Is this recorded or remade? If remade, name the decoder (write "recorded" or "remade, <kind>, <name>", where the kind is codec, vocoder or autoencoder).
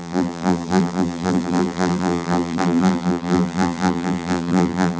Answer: remade, vocoder, BigVGAN v2